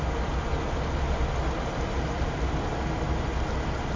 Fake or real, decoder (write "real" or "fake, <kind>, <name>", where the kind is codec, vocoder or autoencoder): real